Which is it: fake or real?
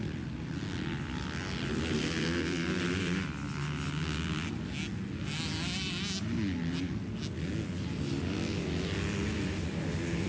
real